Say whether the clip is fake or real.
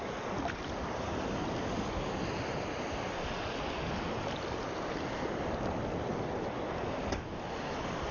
real